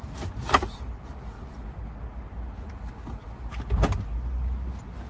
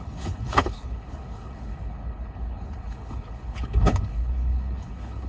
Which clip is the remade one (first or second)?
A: second